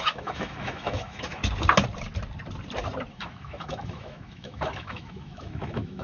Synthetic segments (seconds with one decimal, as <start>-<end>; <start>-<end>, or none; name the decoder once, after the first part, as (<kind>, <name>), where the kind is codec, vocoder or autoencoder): 0.0-1.4 (autoencoder, DAC-VAE); 3.1-6.0